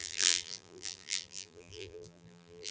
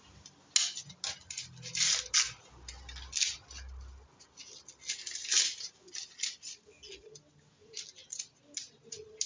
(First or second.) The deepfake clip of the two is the first